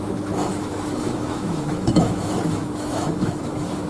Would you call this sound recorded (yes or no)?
no